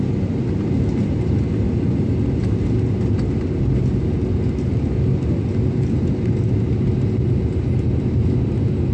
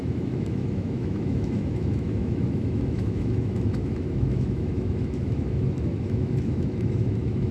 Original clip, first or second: first